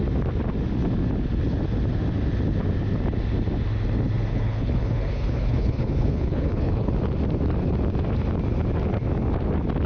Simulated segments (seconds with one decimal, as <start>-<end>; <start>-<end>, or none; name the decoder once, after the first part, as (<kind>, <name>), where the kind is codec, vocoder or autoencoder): 4.3-6.9 (codec, HILCodec)